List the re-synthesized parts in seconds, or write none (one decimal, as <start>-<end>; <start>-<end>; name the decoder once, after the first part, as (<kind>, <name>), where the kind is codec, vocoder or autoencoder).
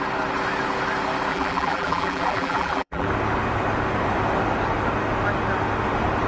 1.3-3.1 (vocoder, BigVGAN v2)